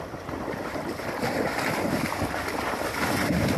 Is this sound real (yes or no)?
yes